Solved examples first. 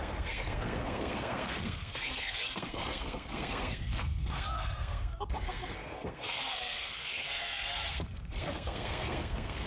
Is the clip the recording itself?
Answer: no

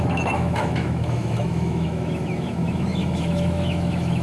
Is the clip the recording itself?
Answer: no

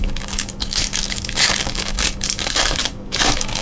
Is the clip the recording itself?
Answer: no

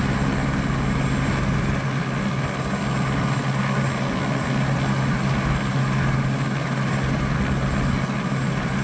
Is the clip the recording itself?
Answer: yes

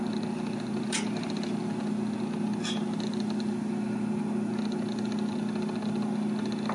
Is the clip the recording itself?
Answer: yes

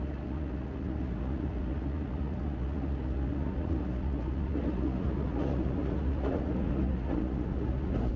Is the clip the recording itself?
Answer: no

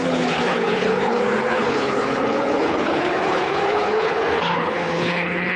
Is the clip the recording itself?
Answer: no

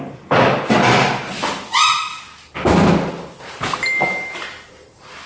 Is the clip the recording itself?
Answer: yes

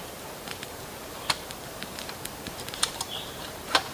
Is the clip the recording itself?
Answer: no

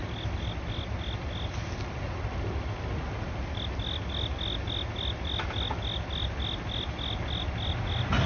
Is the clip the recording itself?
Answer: yes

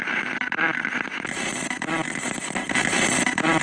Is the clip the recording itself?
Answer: yes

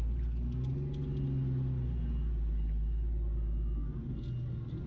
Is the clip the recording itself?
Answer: yes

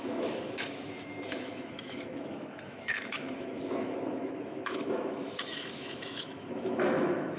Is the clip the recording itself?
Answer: no